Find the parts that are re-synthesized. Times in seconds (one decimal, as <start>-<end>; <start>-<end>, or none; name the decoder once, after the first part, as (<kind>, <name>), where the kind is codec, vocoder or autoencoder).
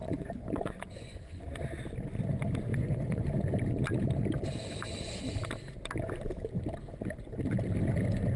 0.0-1.7 (vocoder, Vocos); 2.7-3.2